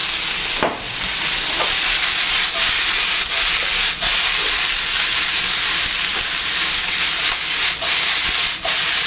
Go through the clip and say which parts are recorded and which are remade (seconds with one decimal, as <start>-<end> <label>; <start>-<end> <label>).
0.0-9.1 recorded